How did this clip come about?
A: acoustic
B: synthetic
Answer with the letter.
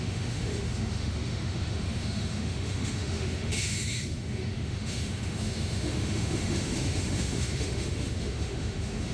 B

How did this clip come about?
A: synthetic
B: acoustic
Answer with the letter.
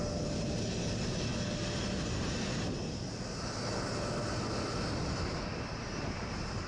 B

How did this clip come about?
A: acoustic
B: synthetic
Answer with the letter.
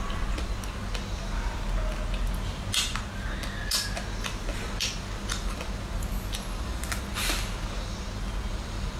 A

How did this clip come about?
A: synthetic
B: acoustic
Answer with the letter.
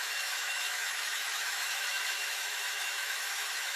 A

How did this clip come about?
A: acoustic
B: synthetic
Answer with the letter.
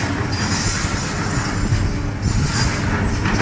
A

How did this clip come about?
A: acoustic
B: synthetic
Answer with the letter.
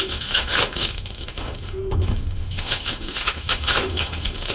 B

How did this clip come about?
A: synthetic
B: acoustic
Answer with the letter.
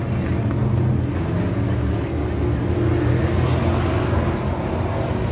B